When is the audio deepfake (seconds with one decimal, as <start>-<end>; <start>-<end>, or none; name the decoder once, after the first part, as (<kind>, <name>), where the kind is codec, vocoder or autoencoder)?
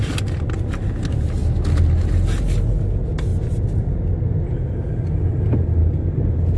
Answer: none